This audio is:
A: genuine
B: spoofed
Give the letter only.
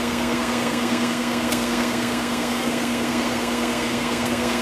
B